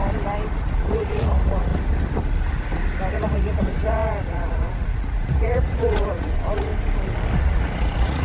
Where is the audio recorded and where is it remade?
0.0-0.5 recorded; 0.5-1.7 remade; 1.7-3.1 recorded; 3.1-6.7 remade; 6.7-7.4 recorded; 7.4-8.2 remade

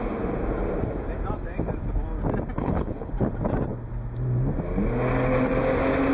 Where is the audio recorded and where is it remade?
0.0-2.6 recorded; 2.6-3.1 remade; 3.1-6.1 recorded

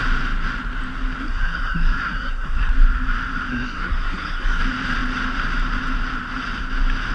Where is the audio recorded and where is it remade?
0.0-1.2 recorded; 1.2-2.7 remade; 2.7-3.5 recorded; 3.5-4.6 remade; 4.6-7.1 recorded

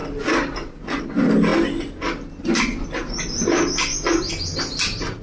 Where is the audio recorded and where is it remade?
0.0-5.2 recorded

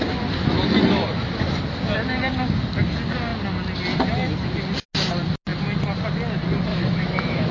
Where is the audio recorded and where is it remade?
0.0-6.7 recorded; 6.7-7.5 remade

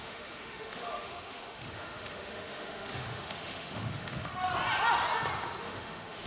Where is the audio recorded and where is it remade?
0.0-4.5 remade; 4.5-5.6 recorded; 5.6-6.3 remade

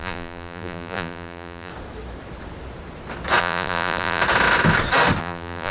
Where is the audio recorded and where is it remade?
0.0-1.7 remade; 1.7-3.4 recorded; 3.4-4.2 remade; 4.2-5.2 recorded; 5.2-5.7 remade